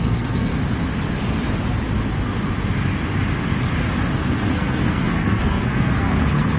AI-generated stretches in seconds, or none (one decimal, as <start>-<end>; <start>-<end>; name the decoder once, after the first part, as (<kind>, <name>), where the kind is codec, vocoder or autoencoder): 0.0-0.5 (codec, SNAC); 4.5-6.6

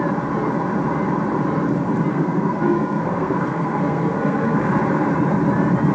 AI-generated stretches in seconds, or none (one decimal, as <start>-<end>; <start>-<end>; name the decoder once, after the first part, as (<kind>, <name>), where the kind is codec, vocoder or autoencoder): 2.1-4.7 (codec, SNAC)

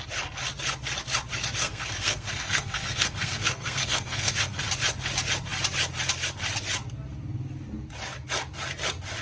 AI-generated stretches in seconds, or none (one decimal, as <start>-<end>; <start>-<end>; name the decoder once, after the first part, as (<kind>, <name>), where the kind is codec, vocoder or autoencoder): 1.6-4.6 (codec, SNAC)

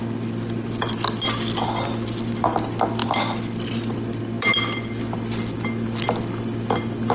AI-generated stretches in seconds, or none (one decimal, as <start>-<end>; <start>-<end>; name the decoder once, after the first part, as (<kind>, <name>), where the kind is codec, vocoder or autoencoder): none

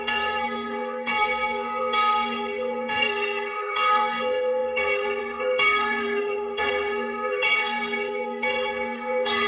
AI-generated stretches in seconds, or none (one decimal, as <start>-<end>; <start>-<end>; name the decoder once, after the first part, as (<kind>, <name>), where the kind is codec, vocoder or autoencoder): 0.0-9.5 (codec, SNAC)

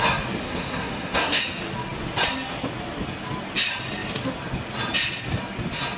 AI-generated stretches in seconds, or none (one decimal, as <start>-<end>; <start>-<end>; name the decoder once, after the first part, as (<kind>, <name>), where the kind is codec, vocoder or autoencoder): 0.4-1.4 (codec, SNAC)

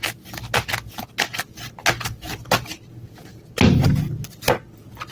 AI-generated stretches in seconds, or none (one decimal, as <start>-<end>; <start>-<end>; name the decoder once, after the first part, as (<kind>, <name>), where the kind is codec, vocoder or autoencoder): none

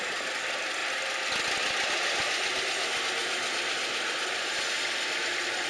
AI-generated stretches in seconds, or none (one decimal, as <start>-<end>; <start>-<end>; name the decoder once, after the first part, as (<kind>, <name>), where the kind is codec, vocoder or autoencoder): none